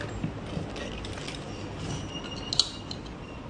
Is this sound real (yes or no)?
yes